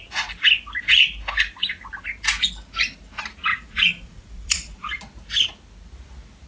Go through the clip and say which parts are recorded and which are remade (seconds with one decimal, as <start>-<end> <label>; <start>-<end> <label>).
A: 0.0-3.5 recorded; 3.5-5.0 remade; 5.0-6.5 recorded